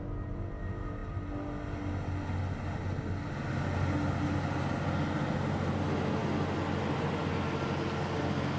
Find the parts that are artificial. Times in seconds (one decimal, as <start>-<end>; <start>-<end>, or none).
none